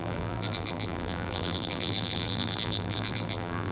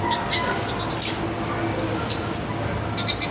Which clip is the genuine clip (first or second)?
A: second